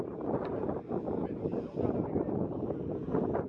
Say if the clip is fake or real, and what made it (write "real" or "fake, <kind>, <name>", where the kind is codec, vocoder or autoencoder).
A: real